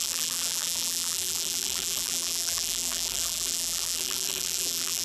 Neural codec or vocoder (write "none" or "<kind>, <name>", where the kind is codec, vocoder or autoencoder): vocoder, BigVGAN v2